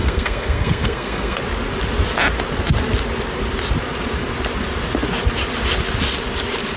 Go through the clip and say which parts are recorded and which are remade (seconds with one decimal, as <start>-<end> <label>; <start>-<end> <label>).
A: 0.0-1.4 remade; 1.4-6.8 recorded